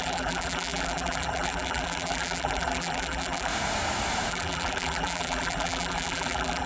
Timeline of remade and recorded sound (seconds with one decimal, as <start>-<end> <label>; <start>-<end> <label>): 0.0-3.5 remade; 3.5-4.3 recorded; 4.3-6.7 remade